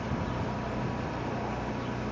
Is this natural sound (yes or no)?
yes